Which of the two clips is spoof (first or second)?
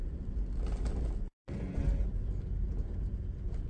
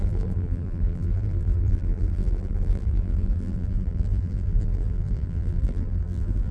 second